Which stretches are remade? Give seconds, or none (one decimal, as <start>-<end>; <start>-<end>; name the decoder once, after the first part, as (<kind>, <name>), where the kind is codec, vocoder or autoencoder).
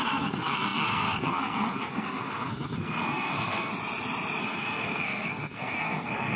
0.0-3.7 (codec, SNAC); 4.4-6.4